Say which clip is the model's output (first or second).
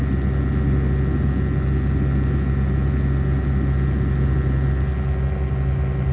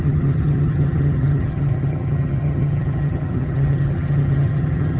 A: second